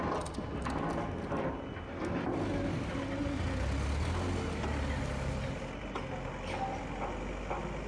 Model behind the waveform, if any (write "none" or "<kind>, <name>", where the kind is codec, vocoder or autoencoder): none